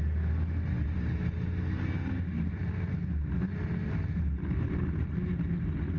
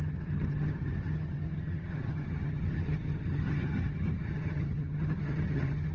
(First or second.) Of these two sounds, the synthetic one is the second